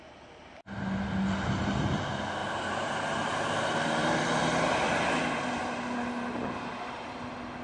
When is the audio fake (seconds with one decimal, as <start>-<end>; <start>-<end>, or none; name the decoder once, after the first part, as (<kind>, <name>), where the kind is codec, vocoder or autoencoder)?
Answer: 2.4-5.1 (vocoder, BigVGAN v2)